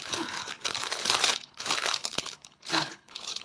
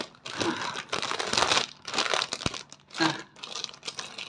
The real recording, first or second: second